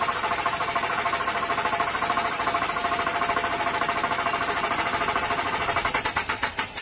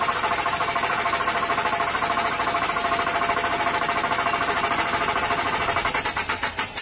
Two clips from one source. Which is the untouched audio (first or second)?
second